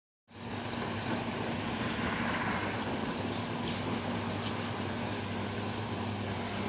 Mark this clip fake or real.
real